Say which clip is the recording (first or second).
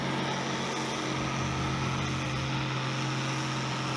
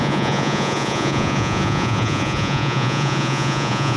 first